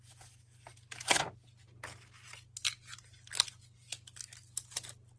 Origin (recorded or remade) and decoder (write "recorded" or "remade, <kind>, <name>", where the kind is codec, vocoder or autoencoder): recorded